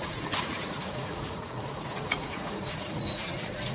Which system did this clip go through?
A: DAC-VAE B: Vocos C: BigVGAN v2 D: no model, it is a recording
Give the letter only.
B